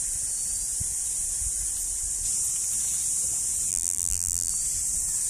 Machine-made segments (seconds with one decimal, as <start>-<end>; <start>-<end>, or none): 3.7-4.5